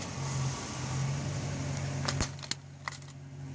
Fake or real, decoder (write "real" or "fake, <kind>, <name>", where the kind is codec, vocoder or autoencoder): real